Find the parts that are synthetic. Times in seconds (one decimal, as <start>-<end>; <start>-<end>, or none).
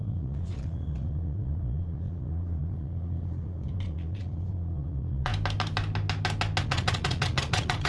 0.0-5.3; 6.6-7.9